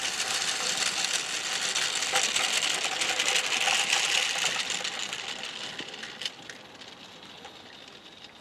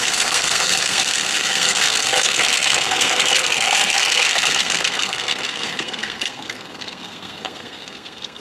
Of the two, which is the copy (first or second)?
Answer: second